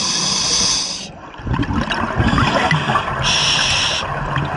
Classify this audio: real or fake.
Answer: real